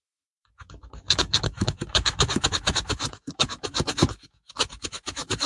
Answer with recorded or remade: remade